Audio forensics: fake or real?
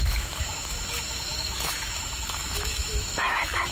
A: fake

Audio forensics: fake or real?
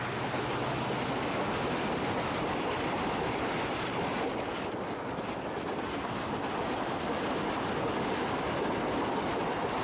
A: real